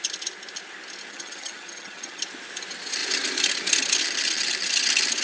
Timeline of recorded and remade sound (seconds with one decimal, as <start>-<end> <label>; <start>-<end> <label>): 0.0-1.1 recorded; 1.1-2.2 remade; 2.2-5.2 recorded